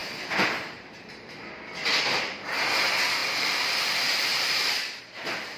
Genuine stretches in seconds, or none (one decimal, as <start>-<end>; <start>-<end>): 1.5-3.2; 5.0-5.6

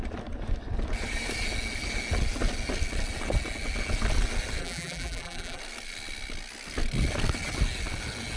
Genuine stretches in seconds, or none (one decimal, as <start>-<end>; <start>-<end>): 0.0-4.6; 5.6-8.4

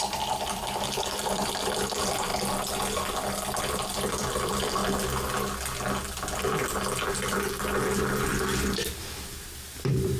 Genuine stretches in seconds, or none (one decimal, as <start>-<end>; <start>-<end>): 2.3-3.6; 4.8-8.7

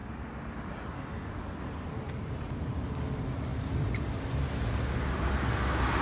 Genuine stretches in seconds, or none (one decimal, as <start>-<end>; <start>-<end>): 2.9-3.5; 4.5-6.0

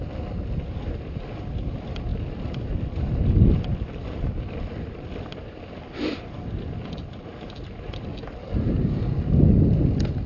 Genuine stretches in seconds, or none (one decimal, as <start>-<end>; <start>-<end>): 0.0-2.1; 6.9-10.3